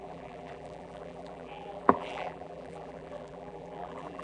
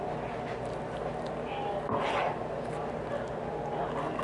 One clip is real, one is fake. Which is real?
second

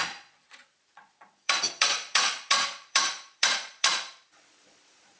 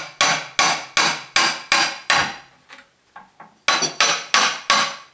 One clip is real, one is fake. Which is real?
second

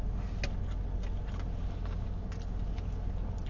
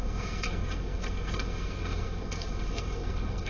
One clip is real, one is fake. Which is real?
first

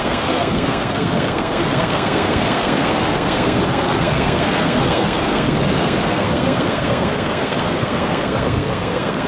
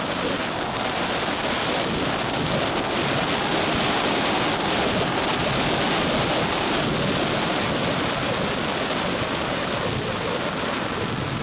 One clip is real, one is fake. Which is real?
second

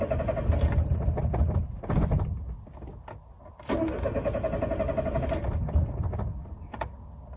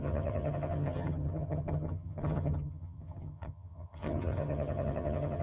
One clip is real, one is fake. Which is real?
first